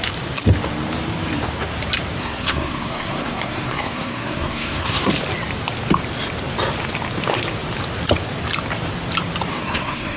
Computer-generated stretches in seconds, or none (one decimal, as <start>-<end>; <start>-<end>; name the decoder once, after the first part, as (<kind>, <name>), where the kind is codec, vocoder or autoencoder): 2.2-5.1 (codec, SNAC); 9.5-10.2